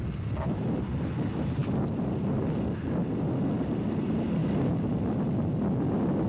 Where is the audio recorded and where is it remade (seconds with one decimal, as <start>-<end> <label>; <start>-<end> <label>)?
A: 0.0-6.3 recorded